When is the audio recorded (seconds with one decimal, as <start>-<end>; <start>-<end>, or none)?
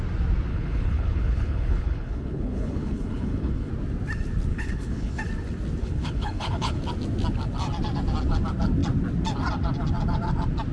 0.0-0.5; 3.7-4.5; 5.2-5.8; 6.8-10.7